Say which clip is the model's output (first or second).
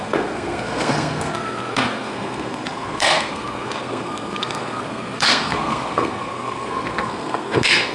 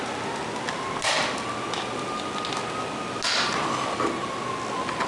first